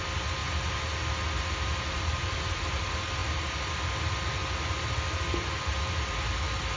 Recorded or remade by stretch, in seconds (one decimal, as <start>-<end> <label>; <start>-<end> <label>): 0.0-6.8 recorded